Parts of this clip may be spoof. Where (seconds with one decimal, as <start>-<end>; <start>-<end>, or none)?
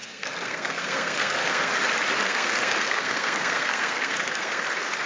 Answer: 0.0-1.7; 2.2-4.6